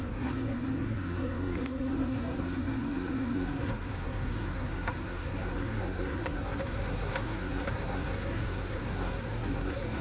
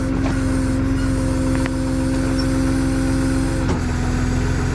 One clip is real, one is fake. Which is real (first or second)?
second